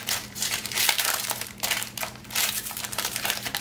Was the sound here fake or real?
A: fake